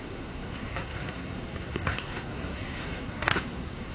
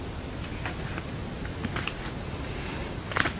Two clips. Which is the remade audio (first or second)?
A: first